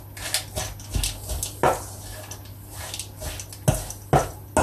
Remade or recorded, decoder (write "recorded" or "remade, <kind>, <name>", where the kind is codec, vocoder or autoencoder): recorded